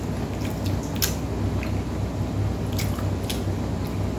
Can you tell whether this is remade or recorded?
recorded